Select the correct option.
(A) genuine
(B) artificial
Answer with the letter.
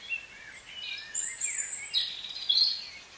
A